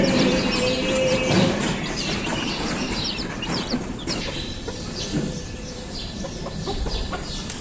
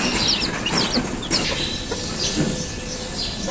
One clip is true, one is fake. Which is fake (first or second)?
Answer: first